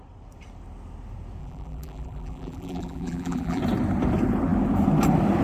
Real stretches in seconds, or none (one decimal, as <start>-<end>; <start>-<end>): 0.0-1.4; 3.6-5.4